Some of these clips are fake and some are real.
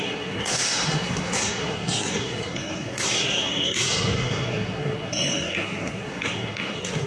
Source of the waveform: fake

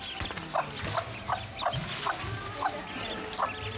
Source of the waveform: real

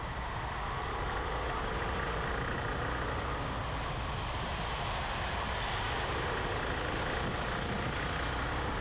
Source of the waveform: real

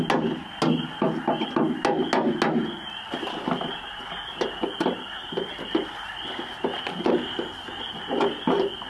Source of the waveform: real